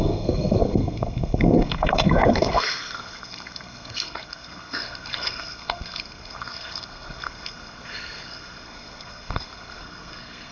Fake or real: fake